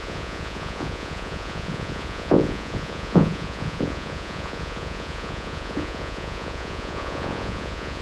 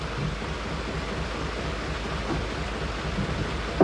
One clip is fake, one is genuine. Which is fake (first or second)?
first